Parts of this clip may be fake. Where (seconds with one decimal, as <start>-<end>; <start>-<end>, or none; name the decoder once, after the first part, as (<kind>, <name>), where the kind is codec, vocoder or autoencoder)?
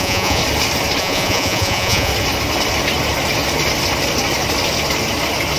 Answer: 0.0-0.4 (vocoder, Vocos); 1.0-2.1